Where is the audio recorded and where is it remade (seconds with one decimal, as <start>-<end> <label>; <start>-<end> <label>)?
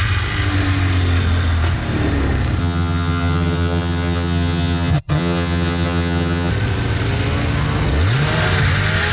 0.0-2.6 recorded; 2.6-6.5 remade; 6.5-9.1 recorded